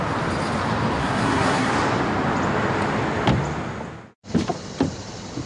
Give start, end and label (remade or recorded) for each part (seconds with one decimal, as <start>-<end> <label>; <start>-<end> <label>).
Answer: 0.0-1.0 recorded; 1.0-1.7 remade; 1.7-5.5 recorded